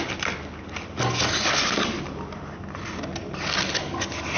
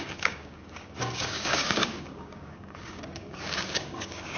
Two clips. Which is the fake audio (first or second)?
second